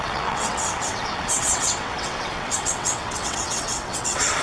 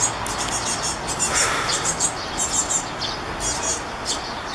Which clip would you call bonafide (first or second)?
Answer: second